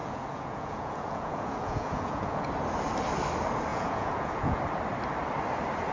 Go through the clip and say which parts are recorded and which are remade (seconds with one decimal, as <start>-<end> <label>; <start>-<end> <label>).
0.0-2.5 remade; 2.5-3.7 recorded; 3.7-4.6 remade; 4.6-5.9 recorded

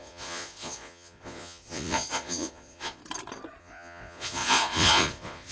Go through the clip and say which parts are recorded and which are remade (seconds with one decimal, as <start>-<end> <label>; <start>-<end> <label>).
0.0-3.0 remade; 3.0-3.6 recorded; 3.6-5.5 remade

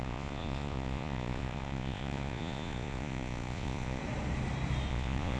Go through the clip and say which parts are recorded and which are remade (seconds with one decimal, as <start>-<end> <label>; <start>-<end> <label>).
0.0-4.0 remade; 4.0-4.9 recorded; 4.9-5.4 remade

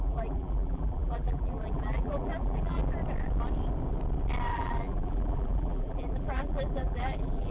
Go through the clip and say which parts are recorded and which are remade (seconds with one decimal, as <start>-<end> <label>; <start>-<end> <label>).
0.0-2.8 remade; 2.8-4.5 recorded; 4.5-7.5 remade

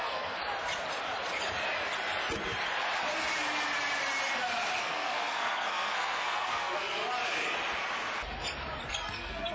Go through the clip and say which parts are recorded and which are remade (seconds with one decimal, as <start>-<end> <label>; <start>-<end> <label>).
0.0-0.4 remade; 0.4-4.8 recorded; 4.8-7.0 remade; 7.0-8.9 recorded; 8.9-9.5 remade